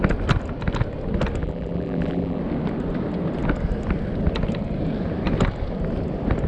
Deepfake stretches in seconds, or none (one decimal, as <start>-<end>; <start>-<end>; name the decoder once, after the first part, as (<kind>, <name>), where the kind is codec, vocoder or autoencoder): 1.4-2.4 (vocoder, BigVGAN v2)